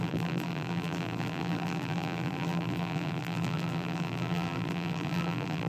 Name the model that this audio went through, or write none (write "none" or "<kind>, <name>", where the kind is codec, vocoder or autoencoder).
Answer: vocoder, BigVGAN v2